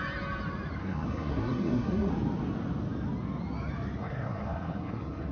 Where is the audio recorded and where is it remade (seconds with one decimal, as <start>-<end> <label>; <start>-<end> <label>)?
0.0-0.8 recorded; 0.8-2.1 remade; 2.1-4.0 recorded; 4.0-5.3 remade